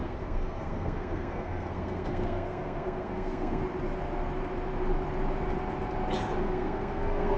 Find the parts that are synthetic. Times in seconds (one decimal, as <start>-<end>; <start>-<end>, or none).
0.0-3.6; 6.4-7.4